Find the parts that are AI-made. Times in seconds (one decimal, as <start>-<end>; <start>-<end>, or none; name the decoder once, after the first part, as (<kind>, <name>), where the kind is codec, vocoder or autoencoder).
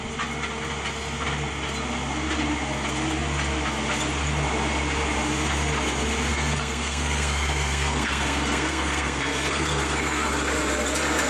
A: 6.3-10.3 (codec, SNAC)